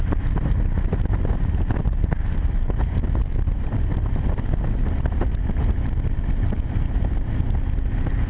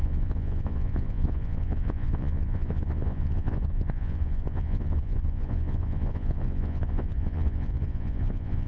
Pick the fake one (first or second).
second